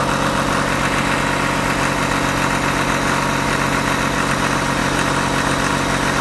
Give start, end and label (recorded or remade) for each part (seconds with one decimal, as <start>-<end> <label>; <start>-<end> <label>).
0.0-6.2 recorded